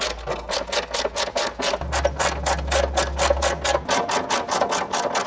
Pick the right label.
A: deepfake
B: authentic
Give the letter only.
B